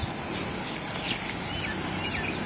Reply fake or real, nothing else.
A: real